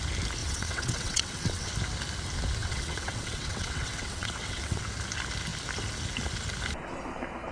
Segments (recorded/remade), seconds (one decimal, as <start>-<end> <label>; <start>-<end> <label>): 0.0-0.4 recorded; 0.4-1.7 remade; 1.7-2.6 recorded; 2.6-4.8 remade; 4.8-7.5 recorded